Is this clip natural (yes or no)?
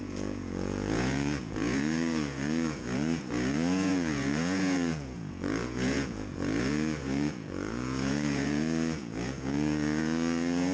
no